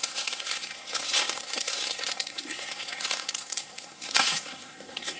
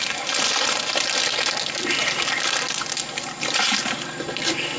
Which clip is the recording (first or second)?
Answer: second